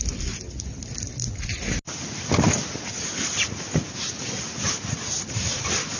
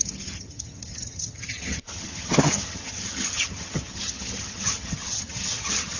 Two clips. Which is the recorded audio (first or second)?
first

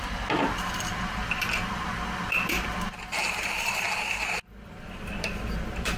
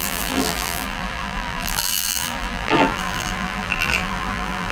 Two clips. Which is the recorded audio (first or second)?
first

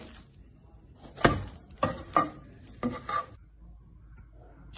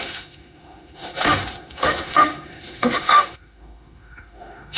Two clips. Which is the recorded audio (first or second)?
first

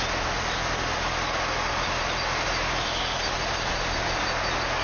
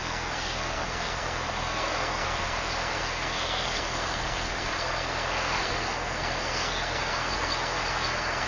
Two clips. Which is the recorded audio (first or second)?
first